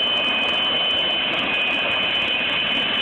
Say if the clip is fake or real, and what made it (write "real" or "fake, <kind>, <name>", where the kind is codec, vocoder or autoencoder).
real